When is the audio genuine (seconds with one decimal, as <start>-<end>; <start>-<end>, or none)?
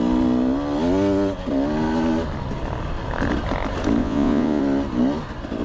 0.0-4.0; 4.6-5.6